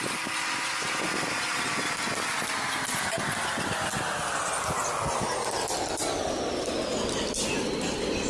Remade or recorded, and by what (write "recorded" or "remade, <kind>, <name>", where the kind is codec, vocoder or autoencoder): recorded